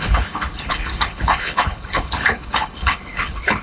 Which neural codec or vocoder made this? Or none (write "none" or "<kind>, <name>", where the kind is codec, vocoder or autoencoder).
codec, HILCodec